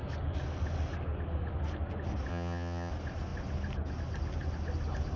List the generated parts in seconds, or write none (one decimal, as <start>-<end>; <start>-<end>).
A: 2.3-2.9